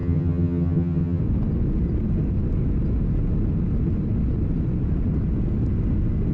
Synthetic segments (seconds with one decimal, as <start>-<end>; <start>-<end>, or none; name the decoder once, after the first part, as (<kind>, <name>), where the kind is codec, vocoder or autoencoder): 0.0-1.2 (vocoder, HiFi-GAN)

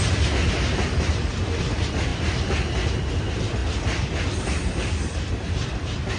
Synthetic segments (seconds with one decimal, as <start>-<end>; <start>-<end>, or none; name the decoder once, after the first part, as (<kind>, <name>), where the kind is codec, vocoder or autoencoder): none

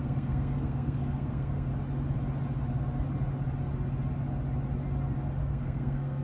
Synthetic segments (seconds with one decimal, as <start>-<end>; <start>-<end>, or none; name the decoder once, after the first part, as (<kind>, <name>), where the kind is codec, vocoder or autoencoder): 0.0-1.7 (codec, SNAC); 5.4-6.2